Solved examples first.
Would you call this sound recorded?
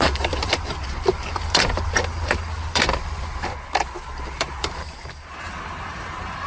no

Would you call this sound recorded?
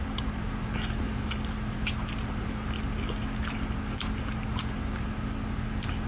yes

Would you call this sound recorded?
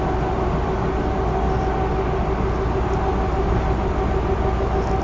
yes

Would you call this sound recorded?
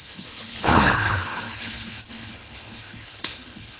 no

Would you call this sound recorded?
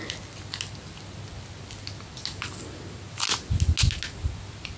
yes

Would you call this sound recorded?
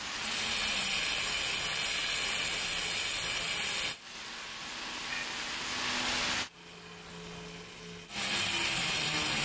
yes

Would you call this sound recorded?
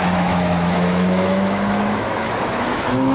no